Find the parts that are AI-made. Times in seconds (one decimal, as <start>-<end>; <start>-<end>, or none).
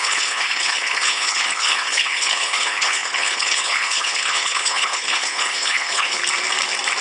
0.0-6.2